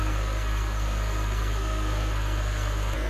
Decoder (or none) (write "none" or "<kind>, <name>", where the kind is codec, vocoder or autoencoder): codec, SNAC